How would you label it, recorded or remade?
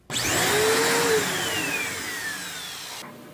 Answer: recorded